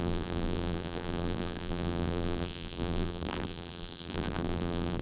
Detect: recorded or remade remade